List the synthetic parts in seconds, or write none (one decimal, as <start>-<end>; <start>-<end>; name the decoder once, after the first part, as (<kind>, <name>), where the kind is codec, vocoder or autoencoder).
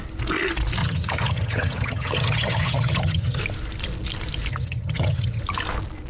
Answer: 0.8-3.4 (vocoder, HiFi-GAN); 4.5-5.4